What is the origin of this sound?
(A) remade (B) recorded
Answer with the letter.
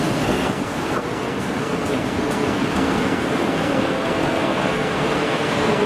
A